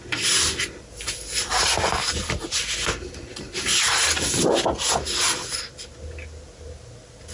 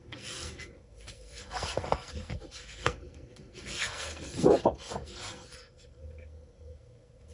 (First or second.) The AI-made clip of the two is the second